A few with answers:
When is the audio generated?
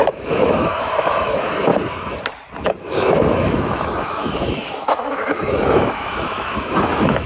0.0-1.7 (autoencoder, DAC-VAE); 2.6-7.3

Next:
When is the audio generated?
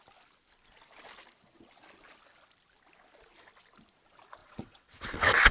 4.4-5.5 (vocoder, WaveNeXt)